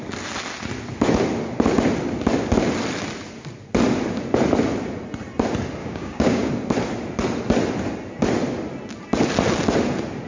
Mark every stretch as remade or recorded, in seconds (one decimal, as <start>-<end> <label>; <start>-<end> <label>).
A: 0.0-5.8 recorded; 5.8-6.5 remade; 6.5-10.3 recorded